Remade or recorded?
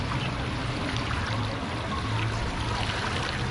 recorded